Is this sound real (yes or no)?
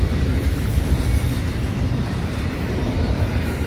no